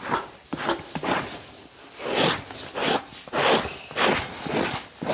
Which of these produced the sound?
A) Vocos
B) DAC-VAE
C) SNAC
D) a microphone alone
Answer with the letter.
D